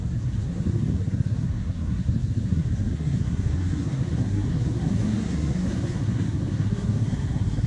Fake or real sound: fake